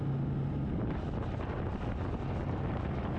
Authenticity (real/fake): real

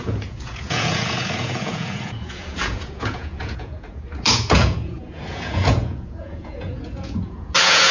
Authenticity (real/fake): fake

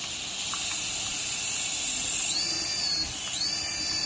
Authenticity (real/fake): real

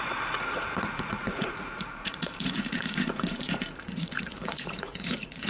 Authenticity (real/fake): fake